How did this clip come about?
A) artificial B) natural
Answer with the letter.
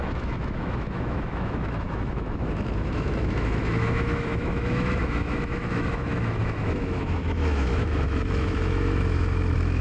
A